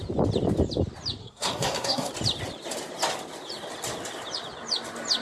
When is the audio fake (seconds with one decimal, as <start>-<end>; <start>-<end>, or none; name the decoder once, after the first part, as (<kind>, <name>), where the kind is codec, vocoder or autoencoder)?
1.2-2.1 (codec, SNAC)